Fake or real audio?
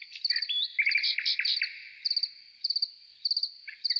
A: real